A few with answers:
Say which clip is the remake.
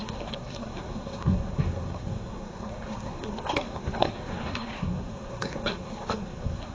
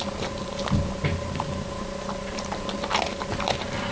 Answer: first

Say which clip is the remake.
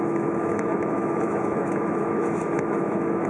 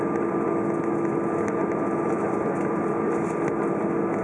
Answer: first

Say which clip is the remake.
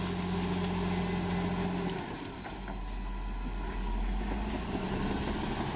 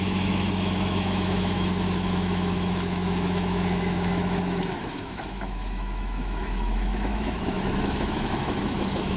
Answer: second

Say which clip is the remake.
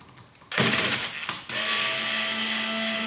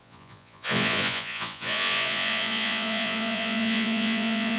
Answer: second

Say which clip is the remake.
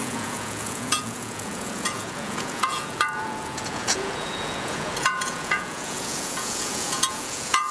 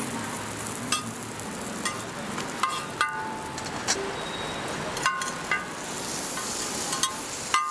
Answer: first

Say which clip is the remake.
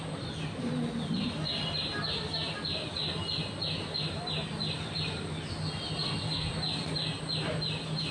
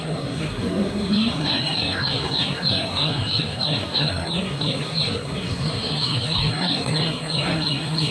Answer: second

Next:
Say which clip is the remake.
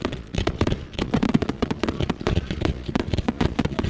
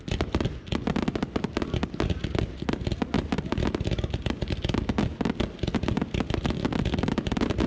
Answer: first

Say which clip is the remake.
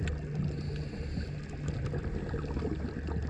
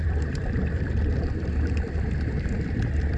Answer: second